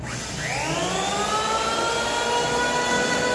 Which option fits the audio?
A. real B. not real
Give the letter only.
A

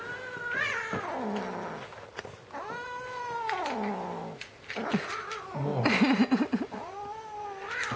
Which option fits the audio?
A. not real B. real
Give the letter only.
B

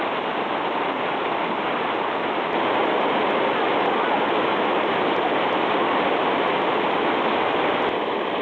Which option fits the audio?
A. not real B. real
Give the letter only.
B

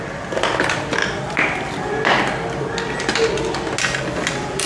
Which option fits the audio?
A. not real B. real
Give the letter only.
B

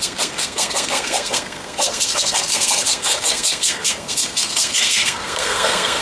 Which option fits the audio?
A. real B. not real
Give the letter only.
B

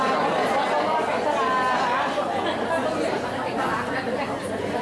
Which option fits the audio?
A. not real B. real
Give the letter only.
B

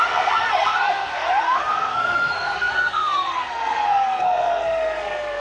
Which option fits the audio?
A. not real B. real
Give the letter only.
A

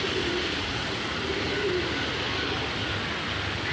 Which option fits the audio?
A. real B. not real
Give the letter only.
A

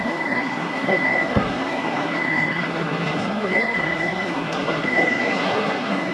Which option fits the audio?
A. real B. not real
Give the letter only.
B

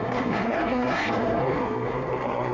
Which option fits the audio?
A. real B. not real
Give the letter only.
B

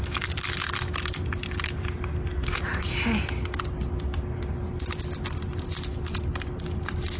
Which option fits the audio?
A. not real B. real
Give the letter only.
B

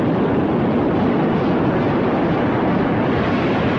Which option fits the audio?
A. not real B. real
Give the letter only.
B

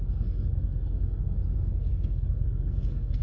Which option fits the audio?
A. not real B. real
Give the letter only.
A